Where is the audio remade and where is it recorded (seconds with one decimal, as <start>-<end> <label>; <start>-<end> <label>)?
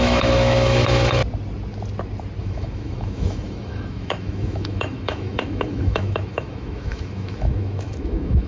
0.0-1.2 remade; 1.2-2.4 recorded; 2.4-8.5 remade